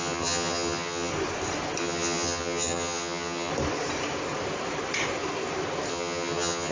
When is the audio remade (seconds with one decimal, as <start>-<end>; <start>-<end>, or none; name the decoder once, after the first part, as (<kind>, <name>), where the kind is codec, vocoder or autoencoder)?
0.0-1.1 (vocoder, HiFi-GAN); 1.8-3.5; 5.9-6.7